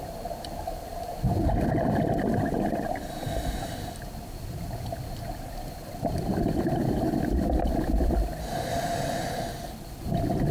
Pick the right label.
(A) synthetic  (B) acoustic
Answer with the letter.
B